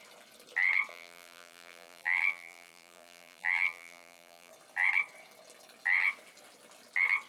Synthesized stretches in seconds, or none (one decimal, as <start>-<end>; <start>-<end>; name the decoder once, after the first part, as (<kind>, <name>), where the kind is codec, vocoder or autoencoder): 0.9-4.5 (vocoder, BigVGAN v2)